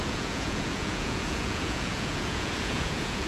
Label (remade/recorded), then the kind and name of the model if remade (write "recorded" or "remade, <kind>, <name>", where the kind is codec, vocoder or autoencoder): remade, vocoder, Vocos